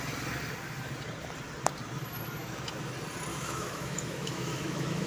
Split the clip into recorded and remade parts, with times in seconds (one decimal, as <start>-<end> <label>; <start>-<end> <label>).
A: 0.0-2.4 recorded; 2.4-2.9 remade; 2.9-3.3 recorded; 3.3-5.1 remade

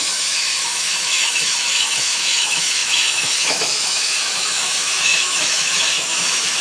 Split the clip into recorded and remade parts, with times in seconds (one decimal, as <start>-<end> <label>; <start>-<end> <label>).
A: 0.0-6.6 remade

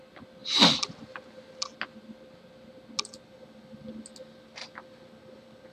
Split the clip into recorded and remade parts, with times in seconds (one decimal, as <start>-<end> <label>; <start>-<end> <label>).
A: 0.0-5.7 recorded

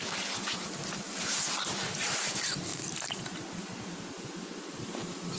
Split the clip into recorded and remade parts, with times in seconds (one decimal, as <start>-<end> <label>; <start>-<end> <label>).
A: 0.0-5.4 recorded

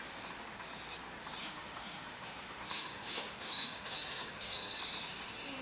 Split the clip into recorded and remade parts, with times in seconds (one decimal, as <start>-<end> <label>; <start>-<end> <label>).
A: 0.0-1.4 recorded; 1.4-4.8 remade; 4.8-5.6 recorded

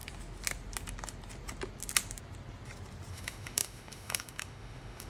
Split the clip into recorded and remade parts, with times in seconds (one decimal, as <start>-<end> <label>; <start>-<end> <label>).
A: 0.0-3.1 recorded; 3.1-5.1 remade

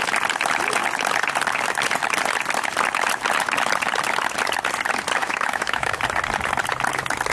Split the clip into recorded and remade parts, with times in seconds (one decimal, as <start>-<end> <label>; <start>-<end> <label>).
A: 0.0-5.2 recorded; 5.2-6.0 remade; 6.0-7.3 recorded

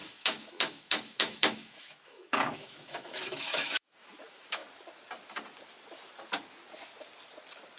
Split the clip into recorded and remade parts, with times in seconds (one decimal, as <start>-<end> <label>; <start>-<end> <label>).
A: 0.0-4.6 remade; 4.6-7.8 recorded